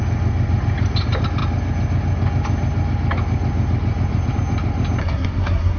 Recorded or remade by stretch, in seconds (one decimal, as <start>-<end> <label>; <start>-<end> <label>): 0.0-5.0 recorded; 5.0-5.8 remade